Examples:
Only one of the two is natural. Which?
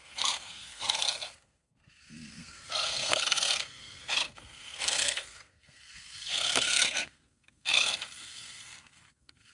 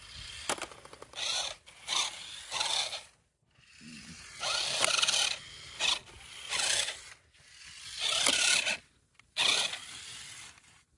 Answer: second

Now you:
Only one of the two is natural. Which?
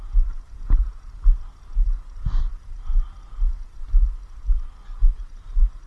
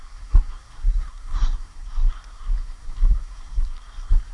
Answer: first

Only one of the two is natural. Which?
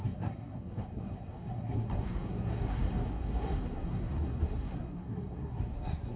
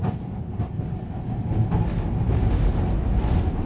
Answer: second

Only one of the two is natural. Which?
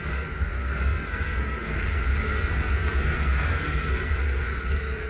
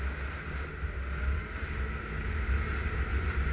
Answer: second